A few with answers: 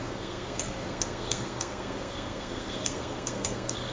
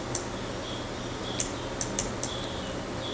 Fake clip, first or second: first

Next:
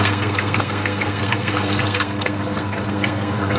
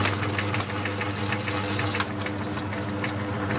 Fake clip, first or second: first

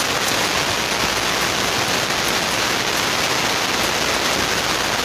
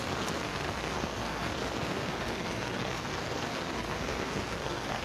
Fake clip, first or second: second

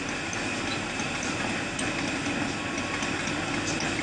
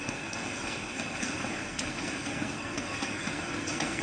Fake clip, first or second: second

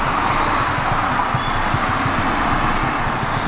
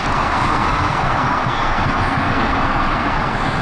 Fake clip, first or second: second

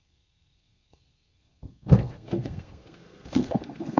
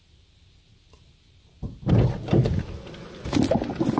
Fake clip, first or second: first